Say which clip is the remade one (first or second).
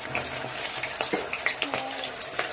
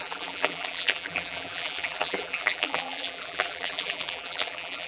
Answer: second